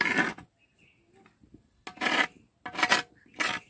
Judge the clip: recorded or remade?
recorded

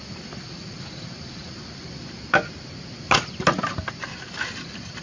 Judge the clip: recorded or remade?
recorded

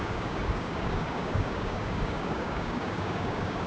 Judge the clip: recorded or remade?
remade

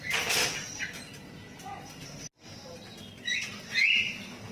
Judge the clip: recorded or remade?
recorded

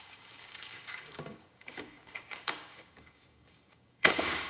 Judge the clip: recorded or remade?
remade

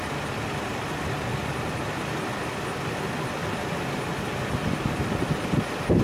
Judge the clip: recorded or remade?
recorded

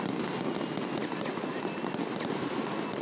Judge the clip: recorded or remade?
recorded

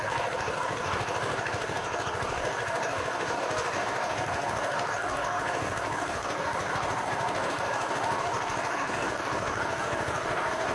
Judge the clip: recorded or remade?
remade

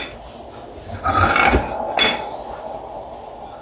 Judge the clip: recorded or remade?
recorded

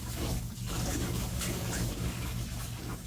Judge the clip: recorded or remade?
remade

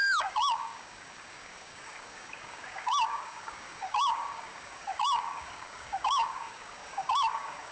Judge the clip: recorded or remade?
remade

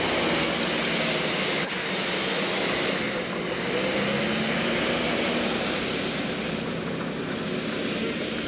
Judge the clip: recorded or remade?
recorded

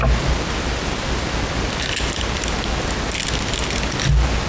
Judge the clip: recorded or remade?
recorded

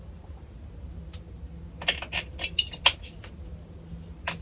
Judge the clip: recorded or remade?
recorded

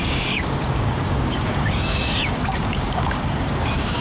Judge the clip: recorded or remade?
remade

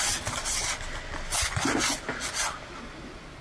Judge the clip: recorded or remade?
recorded